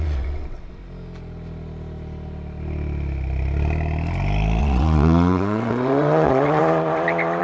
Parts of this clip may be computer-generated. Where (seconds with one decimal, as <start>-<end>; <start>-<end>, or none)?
0.0-0.8; 4.6-6.6